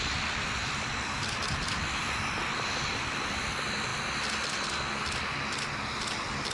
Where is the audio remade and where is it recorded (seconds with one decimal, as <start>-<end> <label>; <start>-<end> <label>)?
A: 0.0-0.6 recorded; 0.6-1.4 remade; 1.4-6.5 recorded